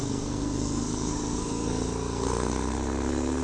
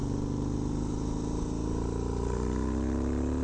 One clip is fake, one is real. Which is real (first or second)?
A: second